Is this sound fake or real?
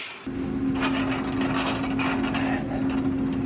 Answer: real